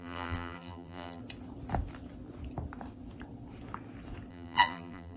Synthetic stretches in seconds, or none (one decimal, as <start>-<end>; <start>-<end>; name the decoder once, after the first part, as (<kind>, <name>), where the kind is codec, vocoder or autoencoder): 0.0-1.2 (vocoder, BigVGAN v2); 4.3-5.2